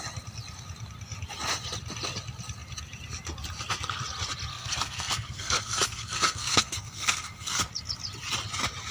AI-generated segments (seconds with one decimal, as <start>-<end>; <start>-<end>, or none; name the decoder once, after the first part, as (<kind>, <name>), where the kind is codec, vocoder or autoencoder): 4.5-7.7 (codec, SNAC)